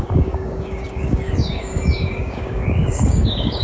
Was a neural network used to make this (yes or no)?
yes